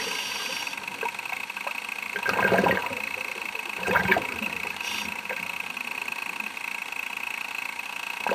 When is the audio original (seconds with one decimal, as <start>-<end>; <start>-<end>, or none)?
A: 0.0-2.8; 5.4-8.3